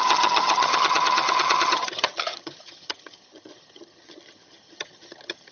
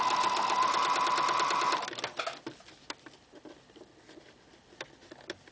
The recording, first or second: second